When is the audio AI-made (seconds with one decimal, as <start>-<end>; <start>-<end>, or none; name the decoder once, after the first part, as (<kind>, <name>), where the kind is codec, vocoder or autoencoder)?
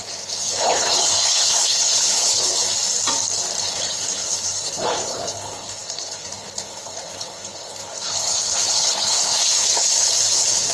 0.0-2.6 (codec, HILCodec); 3.6-10.7